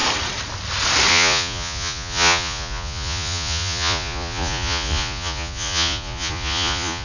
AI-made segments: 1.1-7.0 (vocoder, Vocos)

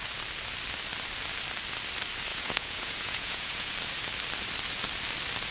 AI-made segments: 2.3-3.7 (vocoder, Vocos)

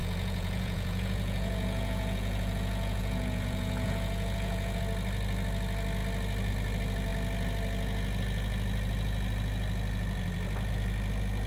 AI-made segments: 0.0-4.8 (vocoder, Vocos)